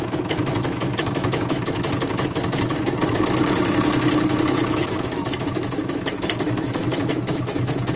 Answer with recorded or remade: remade